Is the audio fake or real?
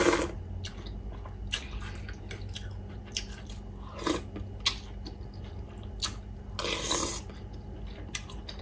real